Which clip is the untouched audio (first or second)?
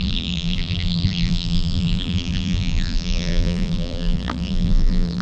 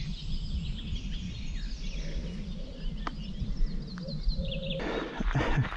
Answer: second